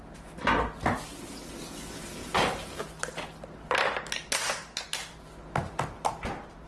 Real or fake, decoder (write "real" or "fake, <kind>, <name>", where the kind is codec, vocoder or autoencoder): real